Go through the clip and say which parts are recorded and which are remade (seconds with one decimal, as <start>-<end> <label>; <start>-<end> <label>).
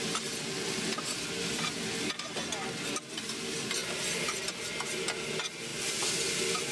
0.0-5.7 recorded; 5.7-6.7 remade